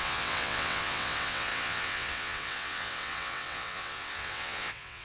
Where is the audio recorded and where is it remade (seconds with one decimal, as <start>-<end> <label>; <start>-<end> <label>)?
0.0-5.0 remade